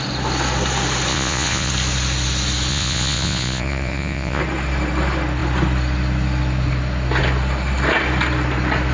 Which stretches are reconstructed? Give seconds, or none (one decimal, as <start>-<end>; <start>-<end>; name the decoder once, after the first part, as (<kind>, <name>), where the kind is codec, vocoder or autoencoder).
1.1-1.7 (vocoder, Vocos); 2.7-4.4